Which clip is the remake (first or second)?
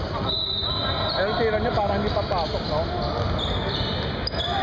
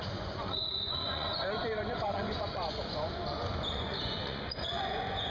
second